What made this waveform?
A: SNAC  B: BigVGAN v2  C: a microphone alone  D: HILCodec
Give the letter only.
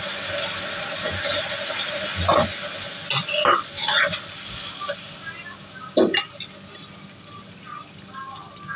C